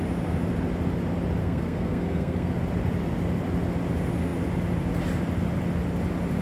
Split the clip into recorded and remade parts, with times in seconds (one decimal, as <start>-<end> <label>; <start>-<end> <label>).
0.0-1.4 recorded; 1.4-2.5 remade; 2.5-6.4 recorded